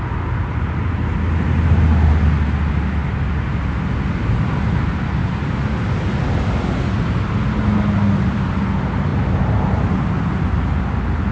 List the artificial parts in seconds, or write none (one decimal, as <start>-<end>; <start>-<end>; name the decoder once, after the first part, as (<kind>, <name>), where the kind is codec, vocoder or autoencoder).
none